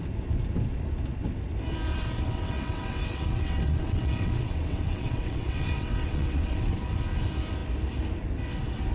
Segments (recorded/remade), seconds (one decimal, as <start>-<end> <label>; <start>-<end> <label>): 0.0-1.9 recorded; 1.9-6.8 remade; 6.8-8.9 recorded